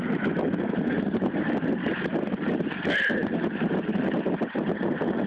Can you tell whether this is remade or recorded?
recorded